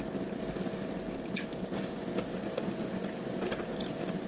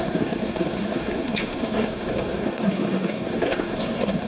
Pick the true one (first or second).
first